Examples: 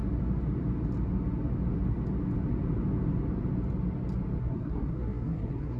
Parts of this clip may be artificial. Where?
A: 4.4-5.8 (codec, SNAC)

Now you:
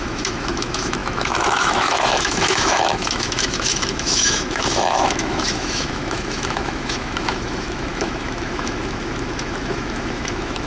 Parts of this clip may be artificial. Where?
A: 0.0-10.7 (autoencoder, DAC-VAE)

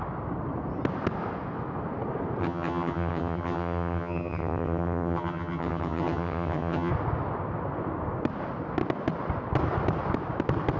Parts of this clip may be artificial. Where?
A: 2.4-6.9 (vocoder, HiFi-GAN)

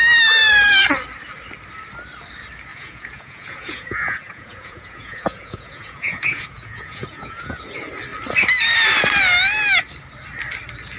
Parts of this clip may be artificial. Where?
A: 2.7-7.6 (vocoder, Vocos)

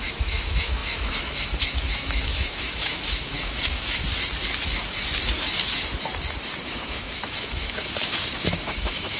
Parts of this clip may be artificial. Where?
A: 0.0-4.0 (autoencoder, DAC-VAE); 6.6-9.2

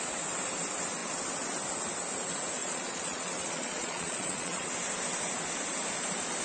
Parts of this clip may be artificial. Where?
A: 2.6-4.7 (vocoder, Vocos)

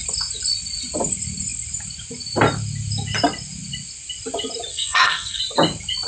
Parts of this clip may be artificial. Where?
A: 4.7-5.4 (codec, SNAC)

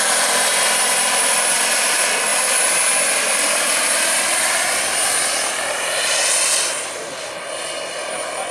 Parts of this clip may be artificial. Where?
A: none